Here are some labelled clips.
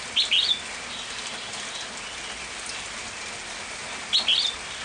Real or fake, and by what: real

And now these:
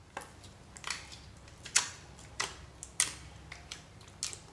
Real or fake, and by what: real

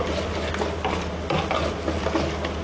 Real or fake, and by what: real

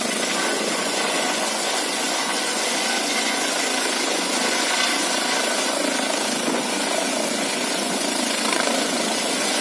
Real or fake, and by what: fake, vocoder, Vocos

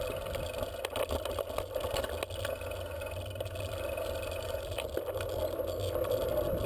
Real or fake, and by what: real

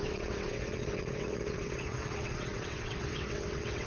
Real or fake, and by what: fake, vocoder, WaveNeXt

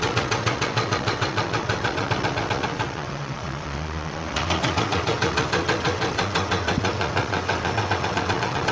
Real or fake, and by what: fake, vocoder, WaveNeXt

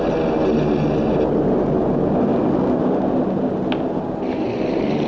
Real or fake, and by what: real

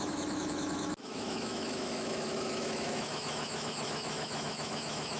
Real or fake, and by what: fake, autoencoder, DAC-VAE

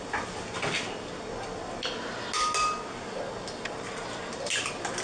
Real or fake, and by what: real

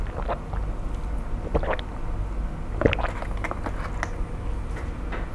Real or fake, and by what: real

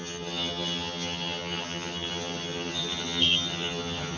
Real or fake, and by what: fake, vocoder, HiFi-GAN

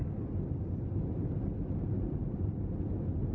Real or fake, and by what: real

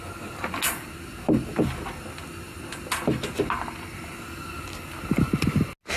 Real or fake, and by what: real